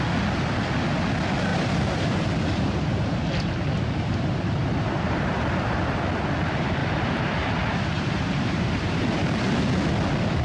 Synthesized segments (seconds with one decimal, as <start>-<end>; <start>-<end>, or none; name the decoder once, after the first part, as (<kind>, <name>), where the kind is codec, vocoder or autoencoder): 1.5-3.1 (vocoder, BigVGAN v2); 4.6-5.8; 6.8-9.5